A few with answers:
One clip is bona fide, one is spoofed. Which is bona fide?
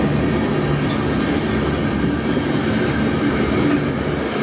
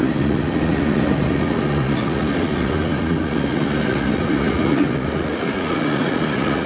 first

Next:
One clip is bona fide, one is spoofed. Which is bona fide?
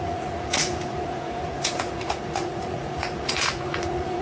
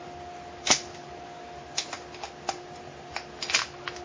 second